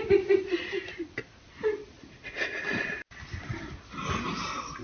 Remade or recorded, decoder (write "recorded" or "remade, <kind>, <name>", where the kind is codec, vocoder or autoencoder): recorded